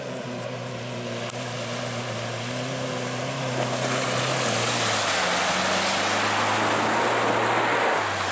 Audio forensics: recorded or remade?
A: recorded